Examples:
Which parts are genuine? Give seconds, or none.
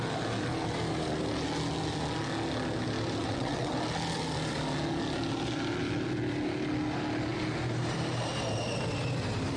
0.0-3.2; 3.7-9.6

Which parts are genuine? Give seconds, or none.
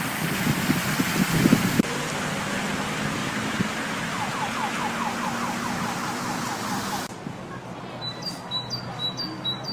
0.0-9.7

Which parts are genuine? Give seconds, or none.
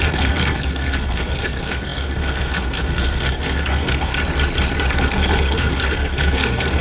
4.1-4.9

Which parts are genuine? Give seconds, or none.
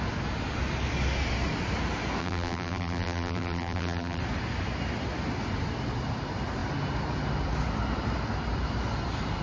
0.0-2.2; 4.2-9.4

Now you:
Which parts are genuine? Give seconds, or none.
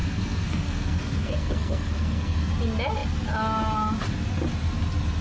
2.5-5.2